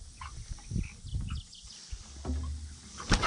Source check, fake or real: real